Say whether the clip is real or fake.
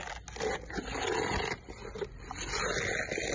real